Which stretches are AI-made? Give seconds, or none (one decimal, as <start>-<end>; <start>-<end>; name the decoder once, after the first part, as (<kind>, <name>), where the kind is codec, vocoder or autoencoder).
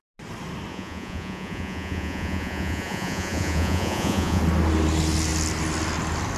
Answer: 0.7-4.4 (vocoder, Vocos)